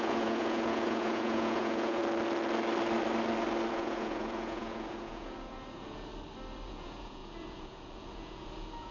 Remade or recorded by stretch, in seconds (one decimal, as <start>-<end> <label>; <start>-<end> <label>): 0.0-2.0 remade; 2.0-3.7 recorded; 3.7-6.1 remade; 6.1-6.7 recorded; 6.7-8.9 remade